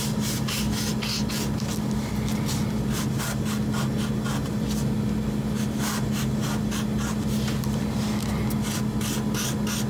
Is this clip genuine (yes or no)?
yes